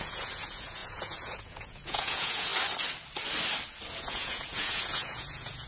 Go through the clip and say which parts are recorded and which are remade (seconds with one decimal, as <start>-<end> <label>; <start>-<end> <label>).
0.0-2.5 remade; 2.5-4.0 recorded; 4.0-5.7 remade